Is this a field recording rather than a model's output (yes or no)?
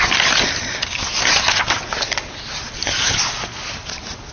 yes